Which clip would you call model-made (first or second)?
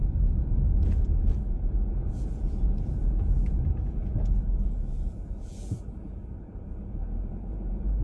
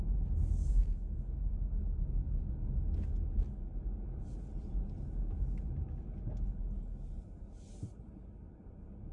first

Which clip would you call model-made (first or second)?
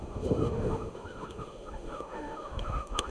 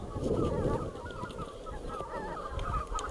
first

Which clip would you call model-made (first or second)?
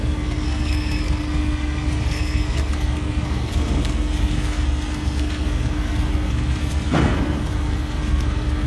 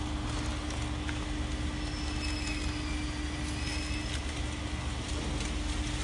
first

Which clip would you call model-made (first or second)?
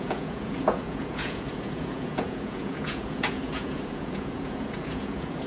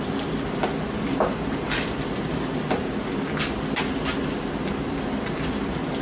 first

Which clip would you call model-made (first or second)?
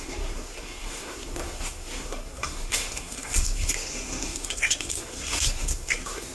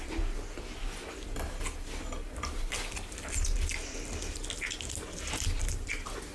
first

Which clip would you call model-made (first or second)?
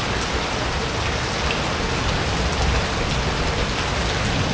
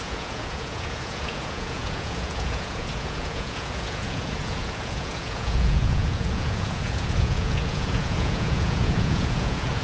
second